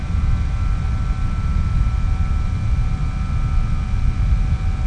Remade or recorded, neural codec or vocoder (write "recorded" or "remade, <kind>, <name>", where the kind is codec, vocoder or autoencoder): recorded